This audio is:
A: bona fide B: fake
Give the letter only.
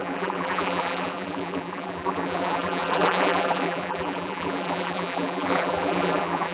B